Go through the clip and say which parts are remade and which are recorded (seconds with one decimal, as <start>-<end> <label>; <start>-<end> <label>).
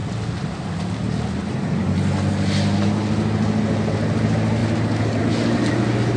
0.0-0.8 remade; 0.8-6.2 recorded